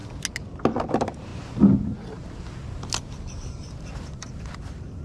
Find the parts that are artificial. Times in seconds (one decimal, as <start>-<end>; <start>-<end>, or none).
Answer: 0.9-1.3; 4.0-5.0